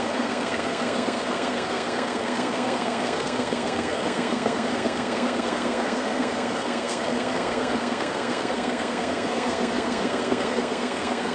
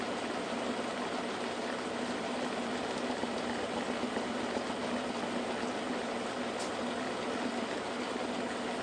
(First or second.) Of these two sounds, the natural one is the second